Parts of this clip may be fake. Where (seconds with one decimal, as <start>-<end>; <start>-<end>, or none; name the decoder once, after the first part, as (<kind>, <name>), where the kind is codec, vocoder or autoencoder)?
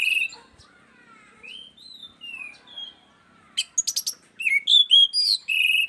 none